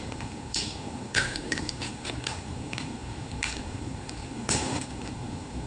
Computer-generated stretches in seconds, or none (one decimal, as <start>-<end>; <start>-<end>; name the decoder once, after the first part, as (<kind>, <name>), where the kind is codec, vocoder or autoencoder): 0.0-5.7 (codec, SNAC)